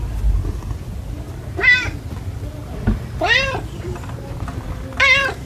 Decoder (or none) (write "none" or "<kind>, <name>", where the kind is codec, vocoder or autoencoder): none